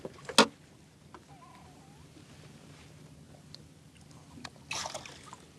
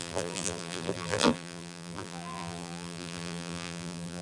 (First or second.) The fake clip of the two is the second